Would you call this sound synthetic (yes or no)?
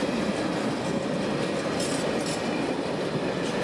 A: no